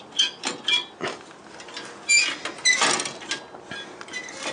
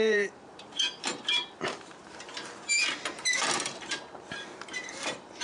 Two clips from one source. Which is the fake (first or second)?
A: second